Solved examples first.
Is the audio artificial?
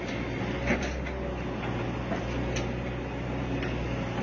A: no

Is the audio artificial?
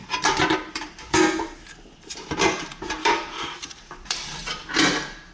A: yes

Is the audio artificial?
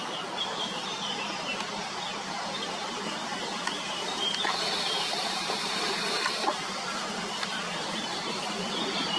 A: yes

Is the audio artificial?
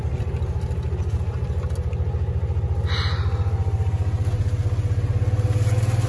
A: no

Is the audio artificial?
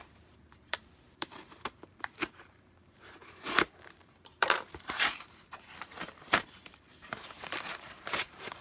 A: yes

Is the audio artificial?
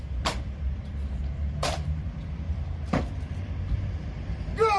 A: yes